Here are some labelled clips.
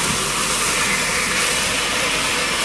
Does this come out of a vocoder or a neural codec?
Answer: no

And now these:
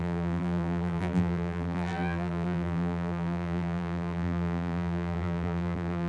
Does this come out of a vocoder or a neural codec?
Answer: yes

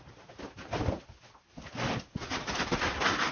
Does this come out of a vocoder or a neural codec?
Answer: no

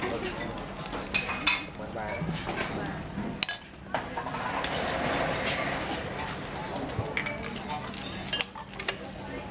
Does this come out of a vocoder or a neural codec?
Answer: no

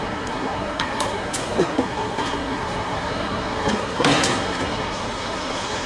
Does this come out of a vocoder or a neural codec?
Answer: yes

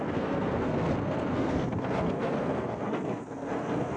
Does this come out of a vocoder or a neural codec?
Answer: yes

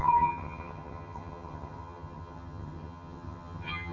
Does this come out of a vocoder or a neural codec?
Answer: yes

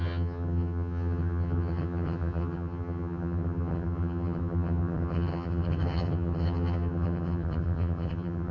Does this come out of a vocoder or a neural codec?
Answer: yes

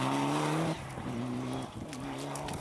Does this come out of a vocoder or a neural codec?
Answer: no